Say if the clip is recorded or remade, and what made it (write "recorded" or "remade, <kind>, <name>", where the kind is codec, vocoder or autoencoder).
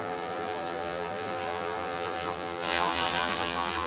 remade, vocoder, BigVGAN v2